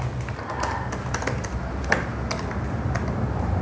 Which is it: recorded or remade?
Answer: recorded